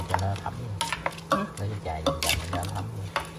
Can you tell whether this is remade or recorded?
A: recorded